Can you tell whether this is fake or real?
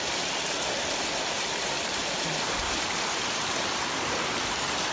fake